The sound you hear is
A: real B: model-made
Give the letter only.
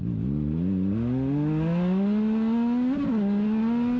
A